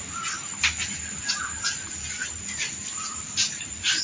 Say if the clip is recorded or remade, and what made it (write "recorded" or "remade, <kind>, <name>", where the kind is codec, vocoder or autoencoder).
recorded